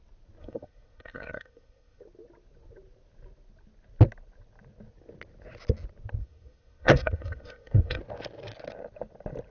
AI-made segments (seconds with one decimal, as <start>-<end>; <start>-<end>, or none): 0.4-2.0; 6.2-8.0